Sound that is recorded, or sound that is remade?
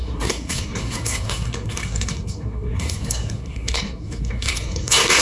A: remade